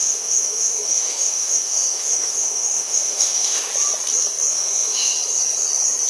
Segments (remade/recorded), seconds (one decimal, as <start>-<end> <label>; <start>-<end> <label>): 0.0-3.7 remade; 3.7-4.5 recorded; 4.5-5.1 remade; 5.1-6.1 recorded